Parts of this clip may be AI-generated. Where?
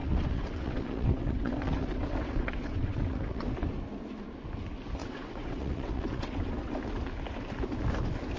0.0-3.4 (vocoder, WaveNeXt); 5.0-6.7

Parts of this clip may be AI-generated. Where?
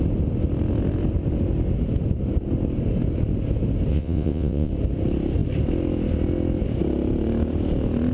3.9-4.7 (vocoder, WaveNeXt)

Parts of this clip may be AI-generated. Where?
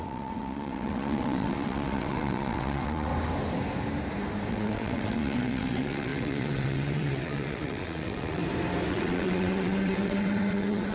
0.0-3.1 (vocoder, WaveNeXt); 4.5-8.4; 8.9-10.9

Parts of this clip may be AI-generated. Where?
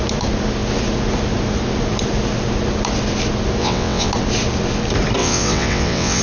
3.6-4.1 (vocoder, WaveNeXt); 5.2-6.2